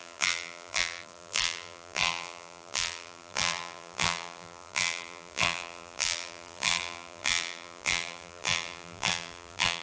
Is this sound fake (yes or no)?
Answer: yes